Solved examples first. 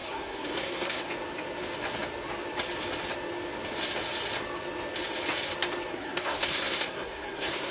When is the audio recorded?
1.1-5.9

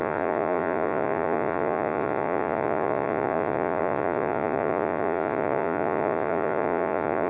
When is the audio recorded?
none

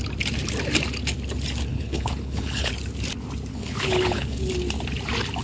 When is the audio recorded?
0.0-1.7; 2.7-3.5; 4.5-5.4

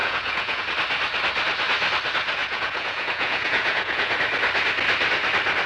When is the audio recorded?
0.6-2.4; 4.1-5.7